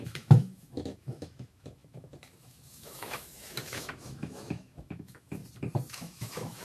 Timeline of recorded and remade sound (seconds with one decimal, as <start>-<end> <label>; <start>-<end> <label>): 0.0-5.4 remade; 5.4-5.9 recorded; 5.9-6.6 remade